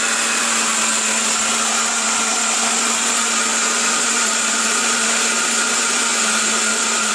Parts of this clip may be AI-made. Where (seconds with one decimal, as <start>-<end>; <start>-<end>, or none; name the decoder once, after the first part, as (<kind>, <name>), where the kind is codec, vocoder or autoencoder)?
none